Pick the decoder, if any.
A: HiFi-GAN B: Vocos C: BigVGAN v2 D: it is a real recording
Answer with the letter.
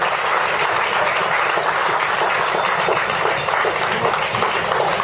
D